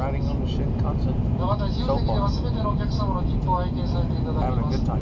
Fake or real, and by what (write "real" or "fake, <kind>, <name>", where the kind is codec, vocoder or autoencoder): real